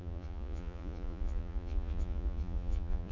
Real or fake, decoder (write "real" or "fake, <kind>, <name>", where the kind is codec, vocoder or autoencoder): fake, vocoder, Vocos